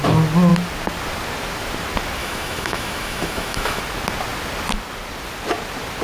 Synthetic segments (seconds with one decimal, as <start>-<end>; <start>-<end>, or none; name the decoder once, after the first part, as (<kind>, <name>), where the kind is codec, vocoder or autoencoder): 2.2-3.8 (autoencoder, DAC-VAE)